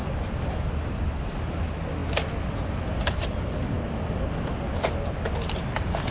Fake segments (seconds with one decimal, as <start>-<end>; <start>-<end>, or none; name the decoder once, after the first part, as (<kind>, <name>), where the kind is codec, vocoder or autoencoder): 0.0-1.6 (vocoder, BigVGAN v2)